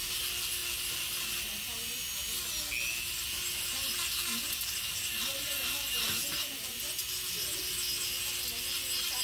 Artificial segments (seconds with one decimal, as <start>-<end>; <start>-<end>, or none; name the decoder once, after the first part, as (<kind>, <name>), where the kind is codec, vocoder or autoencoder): none